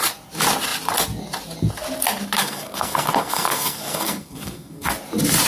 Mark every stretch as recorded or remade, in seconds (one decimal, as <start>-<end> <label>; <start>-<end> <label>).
0.0-2.4 recorded; 2.4-4.9 remade; 4.9-5.5 recorded